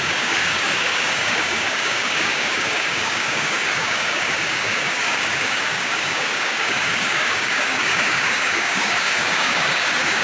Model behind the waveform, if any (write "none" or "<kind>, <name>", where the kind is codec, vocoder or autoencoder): codec, DAC